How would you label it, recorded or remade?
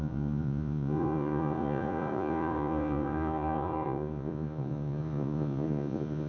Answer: remade